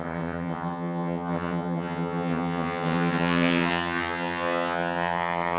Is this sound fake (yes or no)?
yes